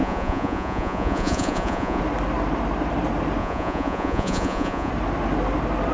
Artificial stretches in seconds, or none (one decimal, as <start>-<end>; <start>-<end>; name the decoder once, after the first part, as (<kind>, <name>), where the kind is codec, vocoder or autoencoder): 0.0-2.0 (vocoder, Vocos); 3.4-4.9